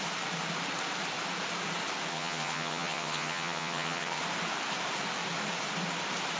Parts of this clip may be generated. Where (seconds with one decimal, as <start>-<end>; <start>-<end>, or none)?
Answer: 2.1-4.2